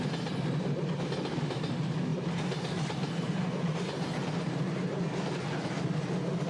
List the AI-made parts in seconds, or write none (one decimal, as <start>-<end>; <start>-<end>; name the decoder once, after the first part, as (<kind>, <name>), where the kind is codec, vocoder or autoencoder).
none